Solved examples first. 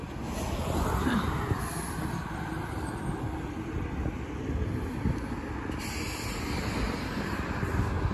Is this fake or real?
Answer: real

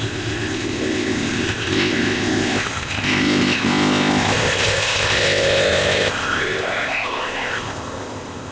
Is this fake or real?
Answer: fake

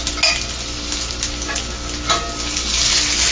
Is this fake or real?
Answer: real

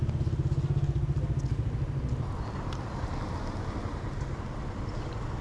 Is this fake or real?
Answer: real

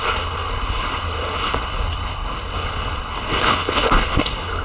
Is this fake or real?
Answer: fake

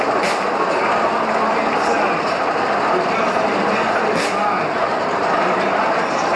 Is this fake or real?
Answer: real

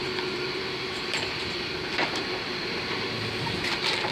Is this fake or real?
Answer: fake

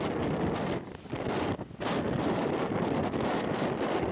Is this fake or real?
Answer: real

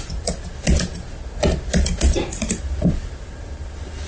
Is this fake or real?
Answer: real